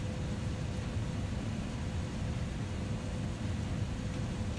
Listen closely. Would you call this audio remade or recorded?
recorded